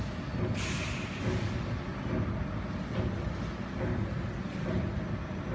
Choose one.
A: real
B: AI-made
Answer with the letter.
A